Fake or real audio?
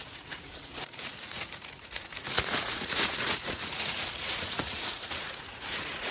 fake